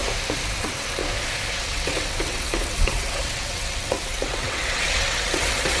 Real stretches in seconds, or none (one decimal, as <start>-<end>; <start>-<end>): 0.0-0.6; 1.0-1.5